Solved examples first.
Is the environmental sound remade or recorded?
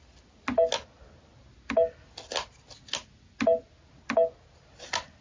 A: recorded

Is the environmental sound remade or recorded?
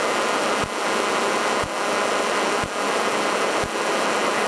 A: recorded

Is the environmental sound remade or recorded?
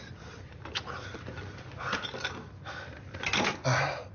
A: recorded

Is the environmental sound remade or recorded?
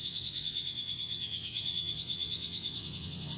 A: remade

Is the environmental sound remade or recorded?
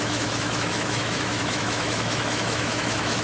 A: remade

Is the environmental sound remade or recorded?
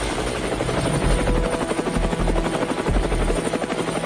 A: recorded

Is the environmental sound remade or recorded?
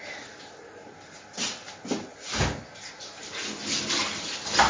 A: recorded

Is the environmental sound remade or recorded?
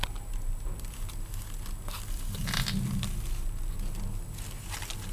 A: recorded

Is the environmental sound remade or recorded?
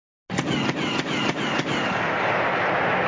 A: recorded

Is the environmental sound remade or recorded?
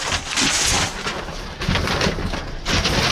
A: recorded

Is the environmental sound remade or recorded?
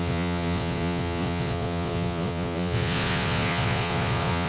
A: remade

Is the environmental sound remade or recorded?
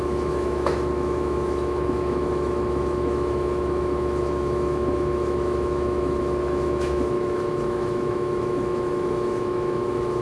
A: remade